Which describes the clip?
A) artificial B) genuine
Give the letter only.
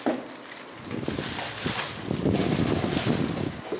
B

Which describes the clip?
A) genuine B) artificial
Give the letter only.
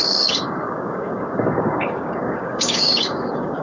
B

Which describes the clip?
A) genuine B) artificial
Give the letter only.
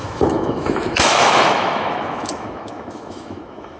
B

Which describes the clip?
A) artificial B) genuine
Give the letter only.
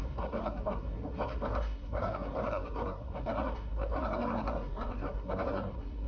A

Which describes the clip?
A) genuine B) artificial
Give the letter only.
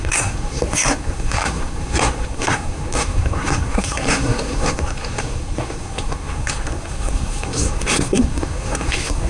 B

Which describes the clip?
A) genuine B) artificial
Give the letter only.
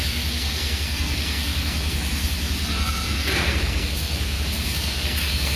B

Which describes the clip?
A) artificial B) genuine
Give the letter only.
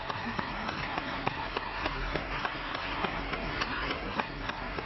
A